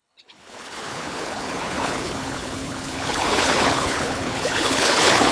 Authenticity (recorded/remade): remade